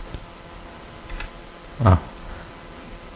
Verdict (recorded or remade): recorded